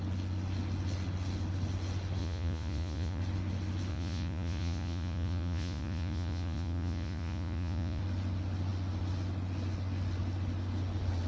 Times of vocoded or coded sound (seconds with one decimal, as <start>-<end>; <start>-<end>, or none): 2.2-3.2; 3.9-8.0